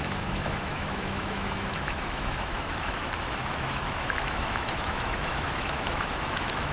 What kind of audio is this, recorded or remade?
remade